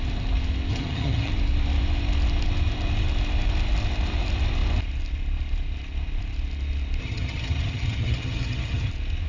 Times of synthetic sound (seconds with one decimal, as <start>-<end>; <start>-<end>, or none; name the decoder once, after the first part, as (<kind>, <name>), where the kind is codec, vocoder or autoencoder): 0.7-1.3 (vocoder, HiFi-GAN); 7.0-8.9